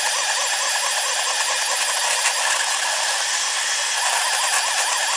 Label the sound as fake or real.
real